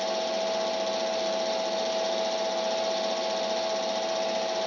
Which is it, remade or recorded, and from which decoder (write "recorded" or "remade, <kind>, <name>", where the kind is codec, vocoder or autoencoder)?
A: recorded